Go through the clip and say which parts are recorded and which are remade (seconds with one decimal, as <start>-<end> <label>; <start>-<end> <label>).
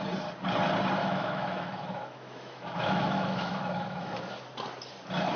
0.0-1.0 recorded; 1.0-4.2 remade; 4.2-5.4 recorded